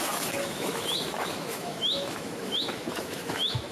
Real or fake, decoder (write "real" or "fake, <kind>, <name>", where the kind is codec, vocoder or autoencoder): fake, autoencoder, DAC-VAE